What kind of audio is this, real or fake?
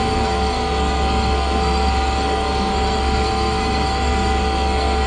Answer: fake